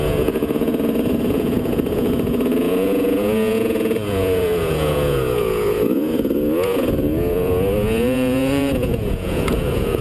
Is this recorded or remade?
remade